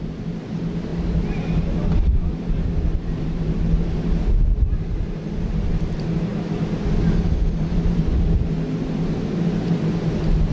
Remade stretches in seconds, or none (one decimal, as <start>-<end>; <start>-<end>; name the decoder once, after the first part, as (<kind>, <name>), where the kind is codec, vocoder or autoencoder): none